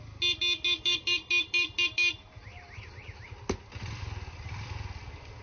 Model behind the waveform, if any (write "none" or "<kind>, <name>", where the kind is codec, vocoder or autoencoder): none